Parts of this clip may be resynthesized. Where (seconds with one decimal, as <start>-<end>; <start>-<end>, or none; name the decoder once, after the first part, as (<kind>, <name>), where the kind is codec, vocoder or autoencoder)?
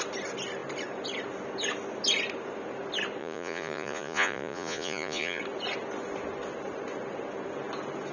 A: 3.2-5.4 (vocoder, Vocos)